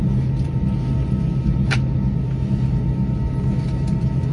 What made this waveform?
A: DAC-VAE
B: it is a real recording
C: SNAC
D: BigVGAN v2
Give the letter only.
B